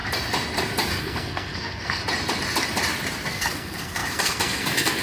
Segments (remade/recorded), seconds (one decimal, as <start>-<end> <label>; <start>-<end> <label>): 0.0-1.0 recorded; 1.0-2.0 remade; 2.0-3.3 recorded; 3.3-5.0 remade